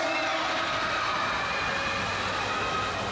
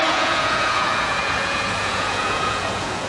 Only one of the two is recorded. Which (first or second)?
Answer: first